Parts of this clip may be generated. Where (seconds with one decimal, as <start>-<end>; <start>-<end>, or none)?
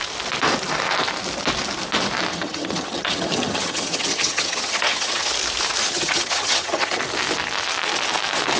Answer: 2.3-5.3; 5.8-7.0